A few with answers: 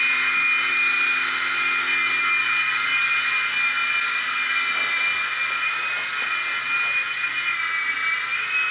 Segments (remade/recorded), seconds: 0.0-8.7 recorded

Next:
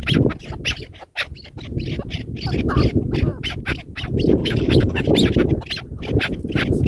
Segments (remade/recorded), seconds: 0.0-4.4 recorded; 4.4-5.1 remade; 5.1-6.9 recorded

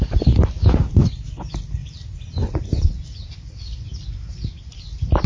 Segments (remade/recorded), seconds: 0.0-5.3 recorded

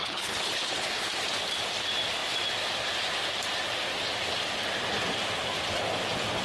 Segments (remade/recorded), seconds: 0.0-1.1 remade; 1.1-6.4 recorded